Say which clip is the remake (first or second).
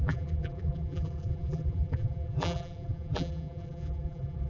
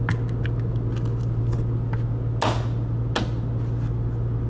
first